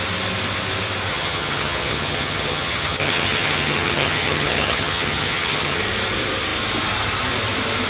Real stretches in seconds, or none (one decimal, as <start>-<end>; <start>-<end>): 0.0-1.1; 5.8-7.9